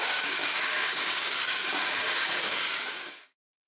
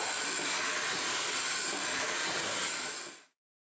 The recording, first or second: second